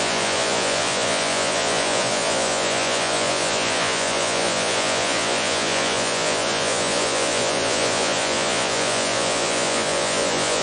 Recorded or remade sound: remade